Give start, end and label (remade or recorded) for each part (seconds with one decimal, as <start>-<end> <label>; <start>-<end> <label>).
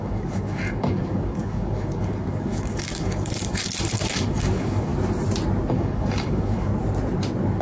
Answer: 0.0-4.9 remade; 4.9-5.7 recorded; 5.7-6.7 remade; 6.7-7.6 recorded